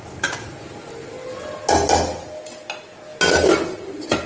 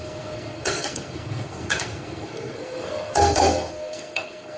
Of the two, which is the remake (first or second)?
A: second